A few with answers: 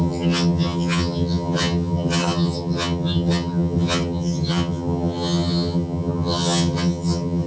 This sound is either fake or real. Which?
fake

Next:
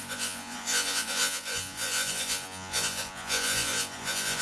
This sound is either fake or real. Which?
fake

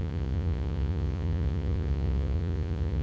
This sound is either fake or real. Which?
fake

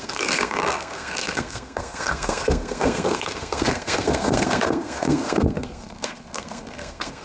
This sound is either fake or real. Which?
fake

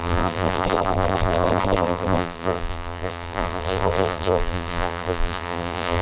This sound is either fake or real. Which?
fake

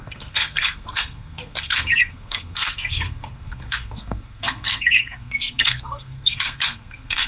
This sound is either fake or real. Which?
fake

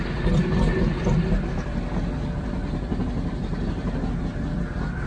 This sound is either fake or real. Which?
real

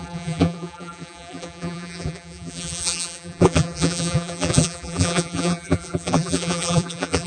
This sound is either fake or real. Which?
fake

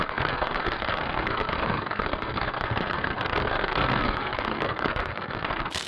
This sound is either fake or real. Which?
fake